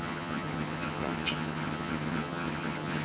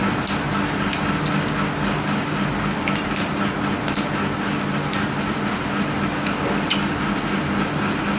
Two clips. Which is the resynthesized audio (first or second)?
first